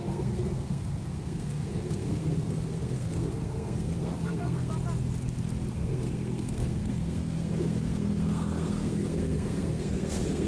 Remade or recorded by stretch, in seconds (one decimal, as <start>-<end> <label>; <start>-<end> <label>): 0.0-4.7 remade; 4.7-5.7 recorded; 5.7-10.5 remade